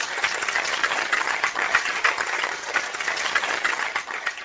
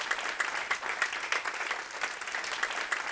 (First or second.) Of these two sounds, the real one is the second